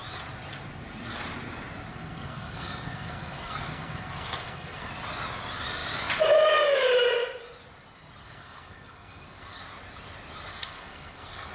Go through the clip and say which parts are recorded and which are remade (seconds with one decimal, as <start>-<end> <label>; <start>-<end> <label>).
0.0-1.9 recorded; 1.9-4.9 remade; 4.9-8.2 recorded; 8.2-9.6 remade; 9.6-10.5 recorded; 10.5-11.5 remade